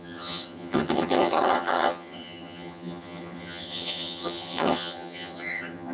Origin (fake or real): fake